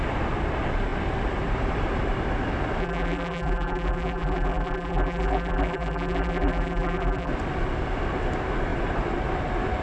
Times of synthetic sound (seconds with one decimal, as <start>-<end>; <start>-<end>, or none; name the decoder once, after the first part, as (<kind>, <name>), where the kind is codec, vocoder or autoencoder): 2.8-7.3 (vocoder, BigVGAN v2)